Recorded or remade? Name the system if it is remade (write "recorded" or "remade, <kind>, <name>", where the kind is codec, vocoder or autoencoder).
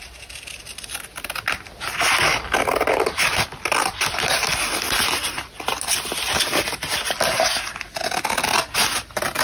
recorded